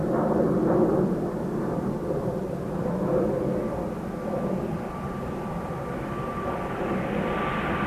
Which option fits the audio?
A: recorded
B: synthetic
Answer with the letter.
A